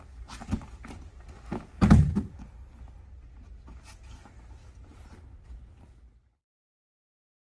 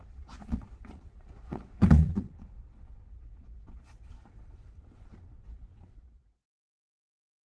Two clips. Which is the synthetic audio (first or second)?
second